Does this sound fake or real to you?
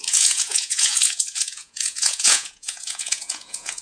fake